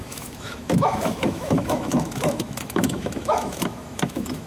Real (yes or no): no